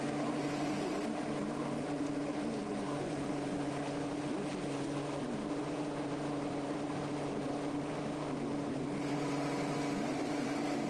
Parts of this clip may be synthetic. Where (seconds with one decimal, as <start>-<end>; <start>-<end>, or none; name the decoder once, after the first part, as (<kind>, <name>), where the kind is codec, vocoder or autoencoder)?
2.6-3.7 (vocoder, Vocos)